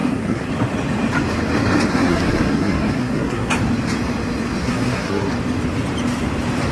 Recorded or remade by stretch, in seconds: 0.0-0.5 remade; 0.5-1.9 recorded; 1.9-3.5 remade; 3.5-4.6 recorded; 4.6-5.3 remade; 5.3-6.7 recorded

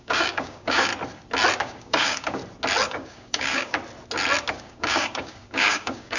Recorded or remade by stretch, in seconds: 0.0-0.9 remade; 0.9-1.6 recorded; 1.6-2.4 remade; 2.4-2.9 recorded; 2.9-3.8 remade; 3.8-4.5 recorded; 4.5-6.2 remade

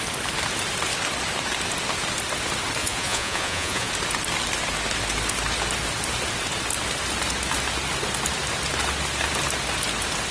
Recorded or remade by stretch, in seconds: 0.0-2.8 recorded; 2.8-3.9 remade; 3.9-10.3 recorded

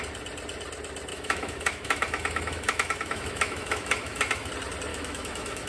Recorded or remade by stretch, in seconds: 0.0-1.1 recorded; 1.1-4.5 remade; 4.5-4.9 recorded; 4.9-5.7 remade

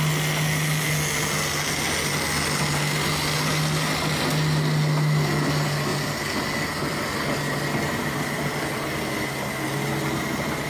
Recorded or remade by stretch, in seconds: 0.0-10.7 recorded

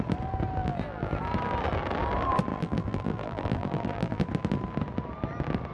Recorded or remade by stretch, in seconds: 0.0-0.6 recorded; 0.6-1.2 remade; 1.2-2.5 recorded; 2.5-4.2 remade; 4.2-5.7 recorded

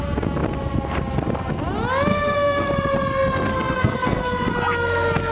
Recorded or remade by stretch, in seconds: 0.0-2.1 recorded; 2.1-2.7 remade; 2.7-3.5 recorded; 3.5-4.5 remade; 4.5-5.3 recorded